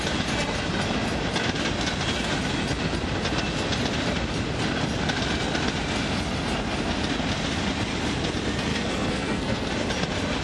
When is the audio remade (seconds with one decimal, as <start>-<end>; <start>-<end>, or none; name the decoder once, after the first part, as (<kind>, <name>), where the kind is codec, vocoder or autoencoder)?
8.7-9.7 (codec, SNAC)